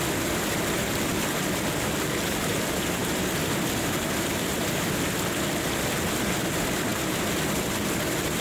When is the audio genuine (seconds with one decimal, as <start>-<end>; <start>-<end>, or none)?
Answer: 0.0-8.4